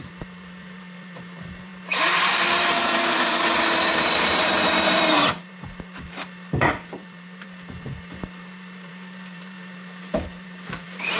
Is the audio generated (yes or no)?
yes